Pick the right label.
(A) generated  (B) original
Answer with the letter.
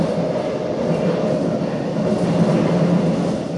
B